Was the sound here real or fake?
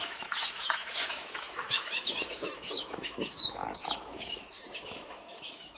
fake